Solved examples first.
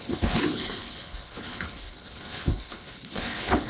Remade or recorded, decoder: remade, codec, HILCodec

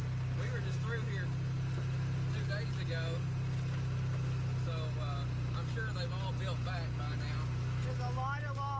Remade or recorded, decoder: recorded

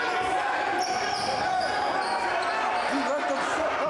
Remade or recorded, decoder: recorded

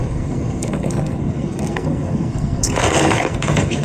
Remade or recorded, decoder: remade, codec, SNAC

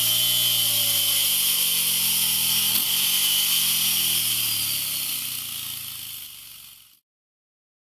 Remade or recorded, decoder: recorded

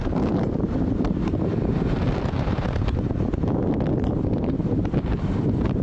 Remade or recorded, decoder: remade, vocoder, BigVGAN v2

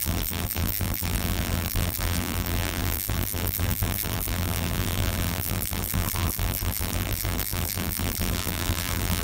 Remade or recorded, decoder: remade, vocoder, BigVGAN v2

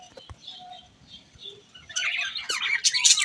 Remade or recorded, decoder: recorded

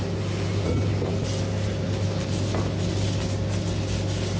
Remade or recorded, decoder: recorded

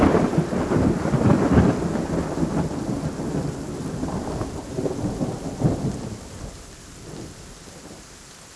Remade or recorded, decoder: recorded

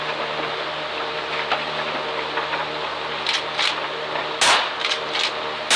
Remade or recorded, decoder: recorded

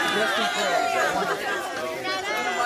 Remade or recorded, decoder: recorded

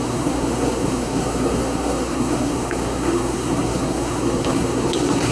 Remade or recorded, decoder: remade, codec, SNAC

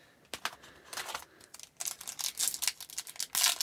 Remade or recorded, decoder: recorded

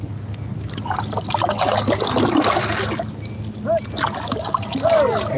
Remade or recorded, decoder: recorded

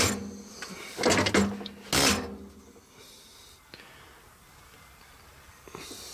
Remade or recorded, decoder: recorded